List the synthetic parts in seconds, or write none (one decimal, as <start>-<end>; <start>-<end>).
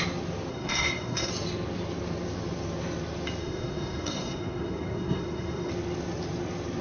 0.5-1.3; 3.4-5.7